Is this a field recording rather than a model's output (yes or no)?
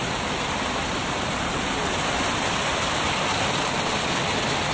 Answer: yes